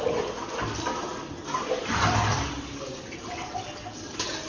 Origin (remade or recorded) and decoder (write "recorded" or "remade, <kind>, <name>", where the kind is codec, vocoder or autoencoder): recorded